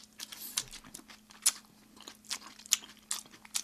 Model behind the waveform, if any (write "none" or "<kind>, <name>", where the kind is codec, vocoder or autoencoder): none